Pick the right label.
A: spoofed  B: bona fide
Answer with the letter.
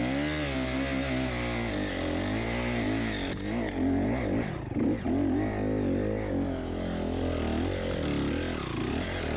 B